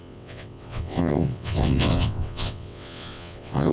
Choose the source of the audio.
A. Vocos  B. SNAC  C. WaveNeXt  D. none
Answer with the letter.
C